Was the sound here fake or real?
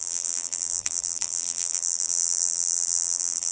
fake